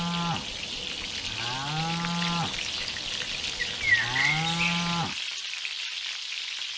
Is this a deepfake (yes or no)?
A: no